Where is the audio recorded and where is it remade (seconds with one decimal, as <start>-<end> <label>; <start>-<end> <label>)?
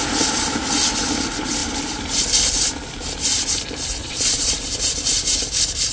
0.0-4.0 recorded; 4.0-4.6 remade; 4.6-5.9 recorded